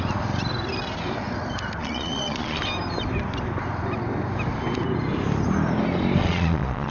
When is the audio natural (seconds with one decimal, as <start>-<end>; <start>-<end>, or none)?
0.0-1.8; 2.6-6.2